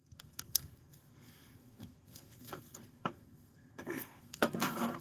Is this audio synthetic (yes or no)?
yes